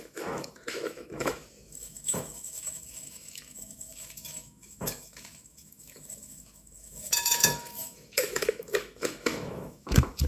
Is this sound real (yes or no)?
no